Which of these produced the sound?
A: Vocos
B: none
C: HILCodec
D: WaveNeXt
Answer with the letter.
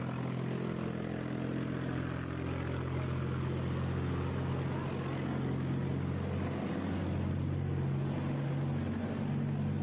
B